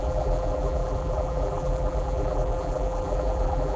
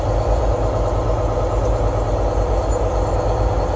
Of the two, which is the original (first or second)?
second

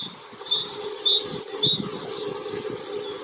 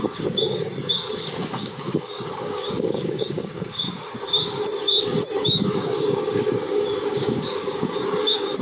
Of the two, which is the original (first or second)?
first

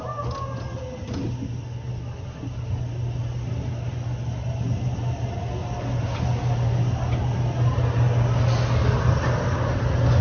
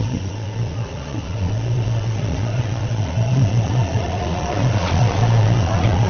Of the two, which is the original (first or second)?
first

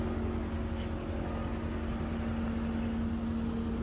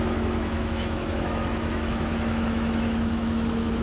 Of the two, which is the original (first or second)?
first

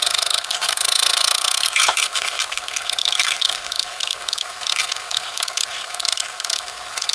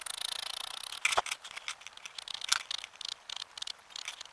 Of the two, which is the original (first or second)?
second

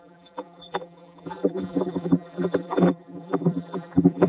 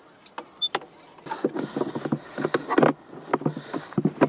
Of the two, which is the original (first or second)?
second